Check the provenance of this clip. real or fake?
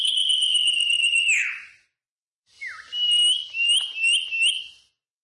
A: real